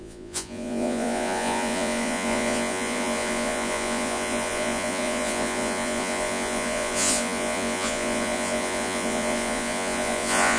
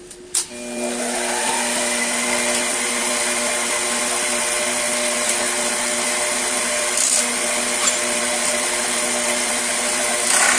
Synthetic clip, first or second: first